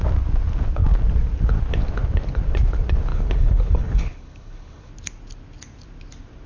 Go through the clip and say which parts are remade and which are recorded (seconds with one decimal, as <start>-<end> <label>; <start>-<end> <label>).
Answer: 0.0-3.1 recorded; 3.1-4.9 remade; 4.9-6.5 recorded